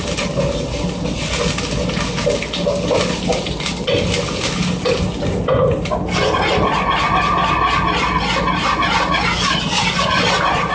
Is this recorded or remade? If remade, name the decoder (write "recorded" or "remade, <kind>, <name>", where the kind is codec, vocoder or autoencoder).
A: recorded